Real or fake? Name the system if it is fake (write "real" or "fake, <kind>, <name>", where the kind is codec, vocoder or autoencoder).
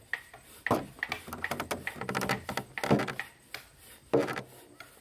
real